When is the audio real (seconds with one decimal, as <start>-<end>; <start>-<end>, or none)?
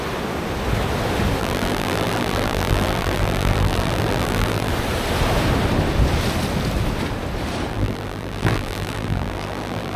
0.0-1.4; 4.7-7.7